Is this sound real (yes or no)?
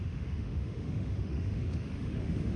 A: no